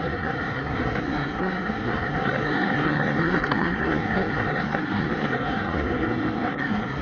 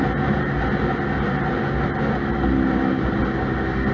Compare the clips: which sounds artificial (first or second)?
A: first